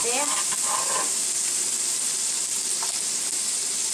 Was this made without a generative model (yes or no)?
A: yes